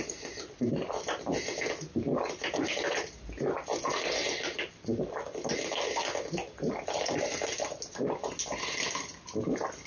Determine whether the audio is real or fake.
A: real